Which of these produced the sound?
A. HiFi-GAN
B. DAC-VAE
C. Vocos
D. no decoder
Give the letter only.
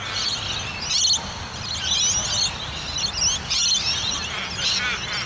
D